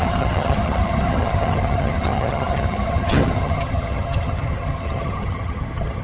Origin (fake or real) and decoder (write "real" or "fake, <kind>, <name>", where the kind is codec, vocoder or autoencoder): fake, vocoder, HiFi-GAN